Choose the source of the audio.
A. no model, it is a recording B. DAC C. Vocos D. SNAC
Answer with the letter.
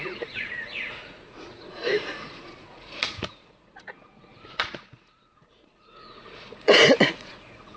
C